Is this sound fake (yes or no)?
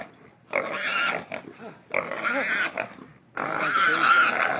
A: no